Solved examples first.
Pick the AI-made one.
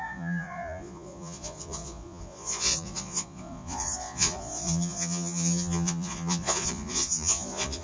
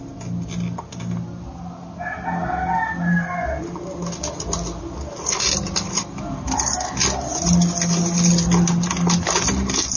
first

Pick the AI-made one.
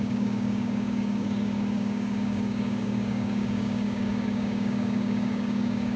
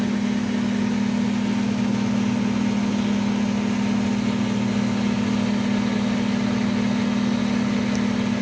first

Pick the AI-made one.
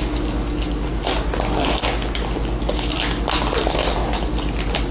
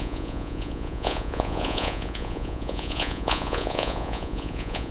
second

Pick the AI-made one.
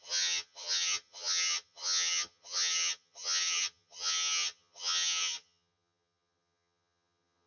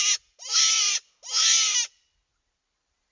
first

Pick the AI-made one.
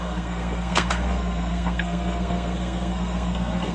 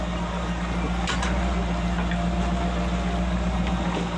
first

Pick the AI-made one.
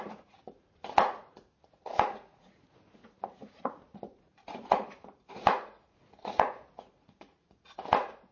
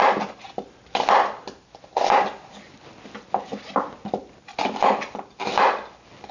first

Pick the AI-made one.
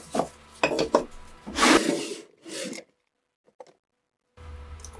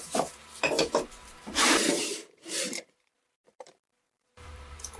second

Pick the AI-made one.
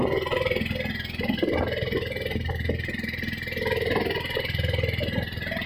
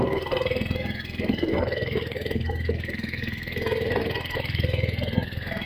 second